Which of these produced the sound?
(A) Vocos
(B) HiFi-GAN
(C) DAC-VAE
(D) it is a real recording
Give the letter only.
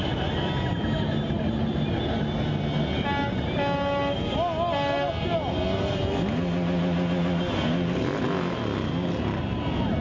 D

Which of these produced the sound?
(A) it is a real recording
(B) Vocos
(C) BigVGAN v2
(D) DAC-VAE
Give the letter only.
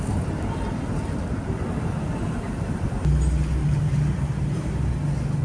A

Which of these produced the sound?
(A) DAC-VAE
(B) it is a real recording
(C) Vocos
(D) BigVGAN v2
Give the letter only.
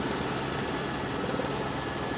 B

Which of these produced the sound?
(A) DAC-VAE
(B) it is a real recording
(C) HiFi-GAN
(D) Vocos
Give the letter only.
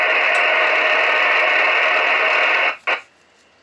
B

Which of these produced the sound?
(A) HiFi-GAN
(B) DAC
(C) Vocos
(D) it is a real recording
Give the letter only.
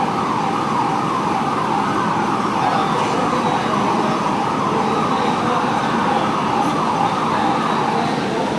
D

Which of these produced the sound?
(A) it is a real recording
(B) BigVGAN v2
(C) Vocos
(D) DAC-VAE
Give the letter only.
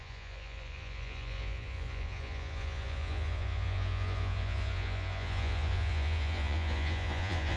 C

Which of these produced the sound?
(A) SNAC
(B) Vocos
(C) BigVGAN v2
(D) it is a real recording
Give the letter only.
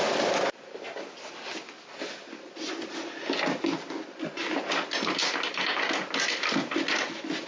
D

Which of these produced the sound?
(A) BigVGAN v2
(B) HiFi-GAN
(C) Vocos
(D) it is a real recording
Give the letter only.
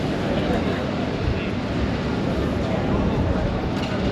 D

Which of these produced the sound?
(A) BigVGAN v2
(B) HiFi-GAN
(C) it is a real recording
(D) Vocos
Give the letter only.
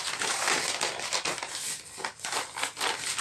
C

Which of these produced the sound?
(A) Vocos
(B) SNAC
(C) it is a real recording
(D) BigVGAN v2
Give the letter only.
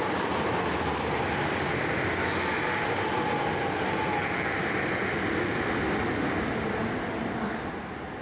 C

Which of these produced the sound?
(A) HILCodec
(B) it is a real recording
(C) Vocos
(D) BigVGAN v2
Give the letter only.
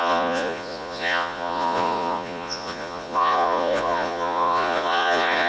C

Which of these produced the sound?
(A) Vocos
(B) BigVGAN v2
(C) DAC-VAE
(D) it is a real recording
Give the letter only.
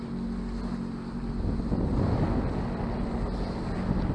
D